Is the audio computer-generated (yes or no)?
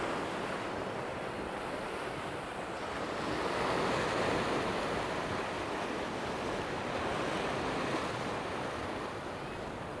no